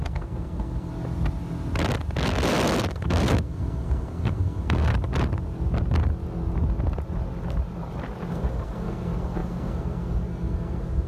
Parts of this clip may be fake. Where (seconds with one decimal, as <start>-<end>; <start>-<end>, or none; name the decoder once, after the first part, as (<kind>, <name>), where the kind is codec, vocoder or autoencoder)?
0.0-0.9 (codec, SNAC); 2.9-4.9; 8.3-11.1